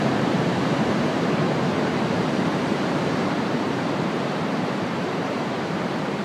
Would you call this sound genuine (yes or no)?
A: no